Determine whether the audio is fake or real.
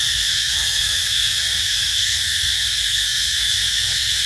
fake